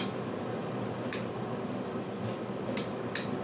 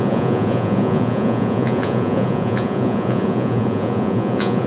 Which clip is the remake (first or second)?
second